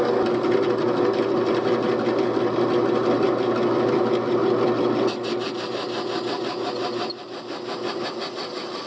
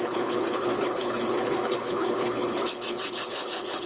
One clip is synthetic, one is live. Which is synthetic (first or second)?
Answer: second